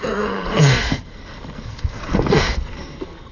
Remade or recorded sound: remade